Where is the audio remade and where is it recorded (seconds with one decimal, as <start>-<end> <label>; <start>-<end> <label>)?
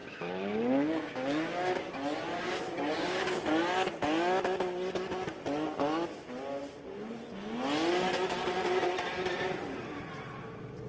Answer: 0.0-1.9 remade; 1.9-2.3 recorded; 2.3-3.4 remade; 3.4-10.9 recorded